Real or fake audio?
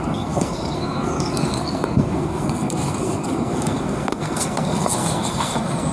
fake